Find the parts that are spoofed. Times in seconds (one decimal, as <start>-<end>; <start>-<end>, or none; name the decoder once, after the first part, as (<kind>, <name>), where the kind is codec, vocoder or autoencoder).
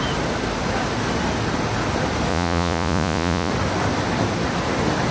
2.3-3.5 (vocoder, Vocos)